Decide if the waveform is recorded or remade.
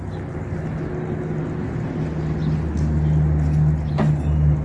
recorded